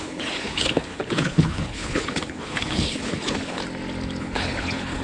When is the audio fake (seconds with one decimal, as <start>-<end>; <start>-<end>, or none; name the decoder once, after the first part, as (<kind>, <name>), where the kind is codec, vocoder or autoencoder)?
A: 0.0-3.6 (codec, HILCodec); 4.2-5.0